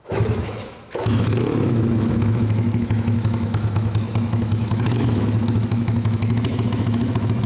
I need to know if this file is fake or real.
fake